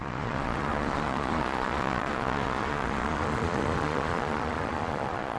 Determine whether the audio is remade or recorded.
remade